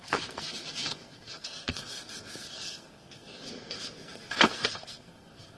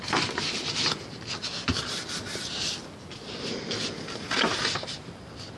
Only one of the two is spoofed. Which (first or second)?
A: first